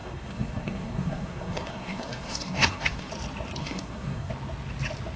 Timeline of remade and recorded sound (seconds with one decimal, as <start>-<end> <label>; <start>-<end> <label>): 0.0-3.1 remade; 3.1-3.6 recorded; 3.6-4.3 remade; 4.3-5.2 recorded